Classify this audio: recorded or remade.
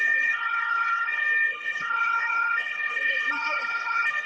remade